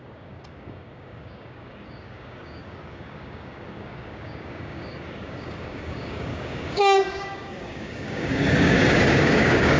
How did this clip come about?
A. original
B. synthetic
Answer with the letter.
B